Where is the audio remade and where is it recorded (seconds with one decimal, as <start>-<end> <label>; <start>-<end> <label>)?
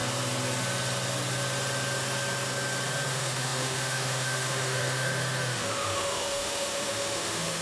0.0-3.1 recorded; 3.1-7.6 remade